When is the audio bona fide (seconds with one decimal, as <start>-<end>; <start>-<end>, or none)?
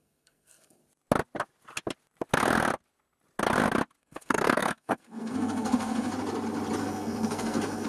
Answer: 0.8-4.0; 6.1-6.8